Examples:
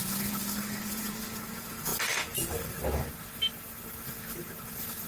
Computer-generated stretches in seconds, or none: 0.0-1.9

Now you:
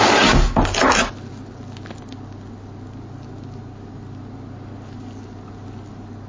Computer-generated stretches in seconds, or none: none